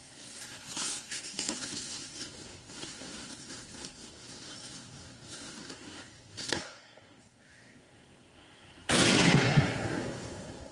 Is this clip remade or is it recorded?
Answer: remade